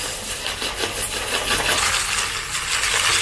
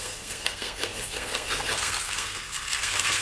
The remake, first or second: second